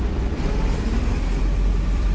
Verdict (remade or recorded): remade